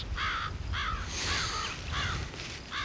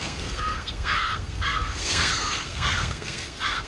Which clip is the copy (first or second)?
second